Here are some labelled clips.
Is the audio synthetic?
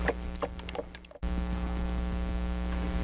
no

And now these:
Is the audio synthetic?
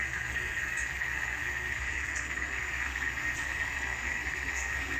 yes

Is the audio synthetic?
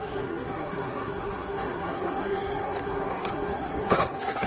yes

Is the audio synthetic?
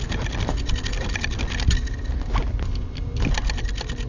no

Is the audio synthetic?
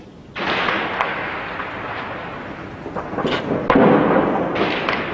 no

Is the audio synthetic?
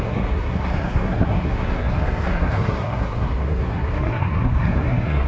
yes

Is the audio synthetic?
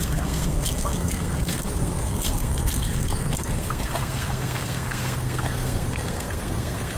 yes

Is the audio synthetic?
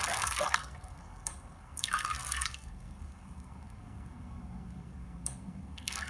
yes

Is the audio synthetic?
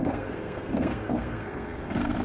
yes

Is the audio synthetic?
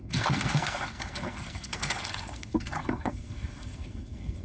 yes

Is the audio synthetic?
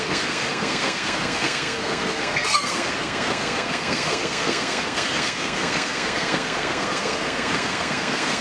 yes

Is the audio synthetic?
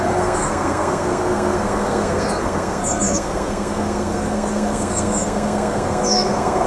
yes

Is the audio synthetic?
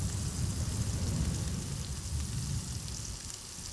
no